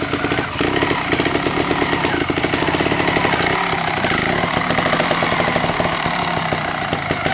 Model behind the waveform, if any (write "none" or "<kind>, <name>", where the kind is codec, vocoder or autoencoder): none